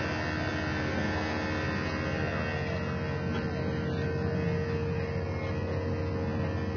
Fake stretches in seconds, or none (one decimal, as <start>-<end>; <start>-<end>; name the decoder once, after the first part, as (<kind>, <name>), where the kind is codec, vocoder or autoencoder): none